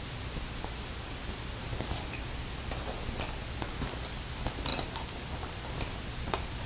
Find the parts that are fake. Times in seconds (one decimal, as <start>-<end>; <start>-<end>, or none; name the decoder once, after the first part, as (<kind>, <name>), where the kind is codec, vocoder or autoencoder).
none